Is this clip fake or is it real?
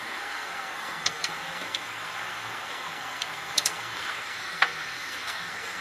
fake